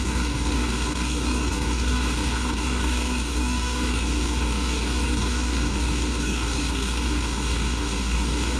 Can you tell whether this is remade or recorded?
remade